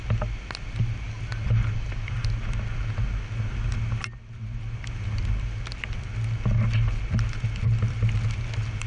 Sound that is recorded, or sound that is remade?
recorded